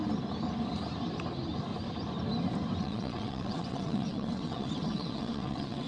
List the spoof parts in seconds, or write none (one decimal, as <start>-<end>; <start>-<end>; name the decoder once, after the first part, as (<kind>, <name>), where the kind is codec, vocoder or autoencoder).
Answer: 2.8-5.9 (vocoder, WaveNeXt)

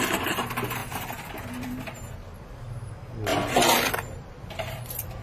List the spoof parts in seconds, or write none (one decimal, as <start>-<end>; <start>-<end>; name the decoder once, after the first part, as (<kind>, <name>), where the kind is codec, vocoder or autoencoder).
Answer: 0.8-1.3 (vocoder, BigVGAN v2); 3.3-5.2

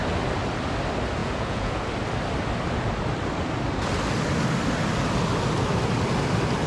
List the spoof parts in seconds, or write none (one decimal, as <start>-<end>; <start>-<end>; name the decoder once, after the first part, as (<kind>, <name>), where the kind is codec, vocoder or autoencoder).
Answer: 1.2-1.7 (vocoder, Vocos)

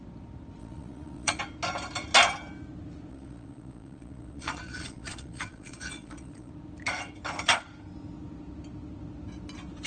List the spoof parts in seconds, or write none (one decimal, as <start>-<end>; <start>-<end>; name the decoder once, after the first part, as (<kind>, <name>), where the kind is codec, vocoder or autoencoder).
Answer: 0.6-1.4 (vocoder, Vocos); 3.1-6.5

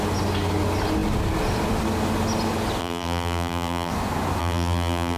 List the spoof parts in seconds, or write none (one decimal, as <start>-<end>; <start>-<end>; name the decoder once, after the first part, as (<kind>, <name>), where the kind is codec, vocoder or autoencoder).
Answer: 2.8-3.9 (vocoder, BigVGAN v2); 4.4-5.2

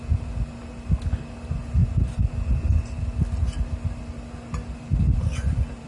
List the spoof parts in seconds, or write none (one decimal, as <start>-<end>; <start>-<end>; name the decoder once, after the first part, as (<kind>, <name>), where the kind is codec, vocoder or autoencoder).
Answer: 4.9-5.9 (vocoder, BigVGAN v2)